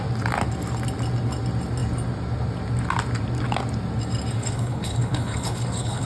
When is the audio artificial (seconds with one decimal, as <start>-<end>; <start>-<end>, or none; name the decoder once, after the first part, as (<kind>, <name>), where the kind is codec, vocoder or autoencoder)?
4.4-6.1 (codec, HILCodec)